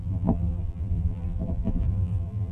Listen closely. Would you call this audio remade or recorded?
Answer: remade